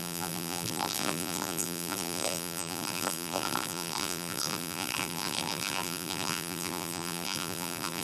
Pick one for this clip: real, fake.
fake